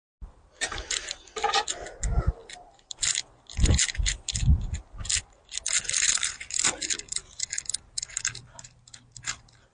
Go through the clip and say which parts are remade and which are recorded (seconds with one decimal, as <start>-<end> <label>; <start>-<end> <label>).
0.0-9.7 recorded